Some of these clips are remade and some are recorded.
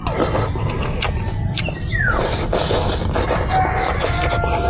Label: recorded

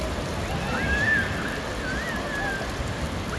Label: recorded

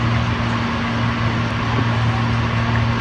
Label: recorded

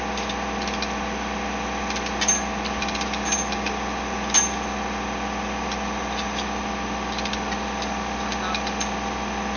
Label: recorded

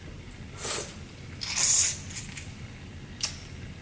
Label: recorded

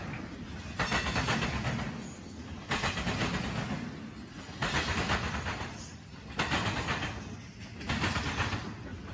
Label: recorded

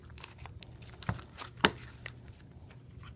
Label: recorded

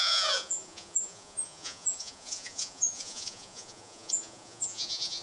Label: remade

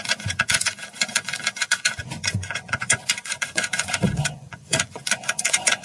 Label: remade